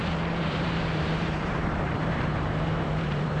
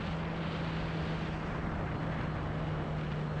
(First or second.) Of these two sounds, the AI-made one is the first